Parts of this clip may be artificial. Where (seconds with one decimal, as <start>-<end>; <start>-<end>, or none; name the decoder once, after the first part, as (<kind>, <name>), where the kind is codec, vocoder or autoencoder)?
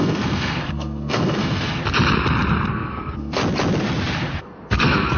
0.0-1.8 (codec, SNAC); 2.7-3.4; 4.4-5.2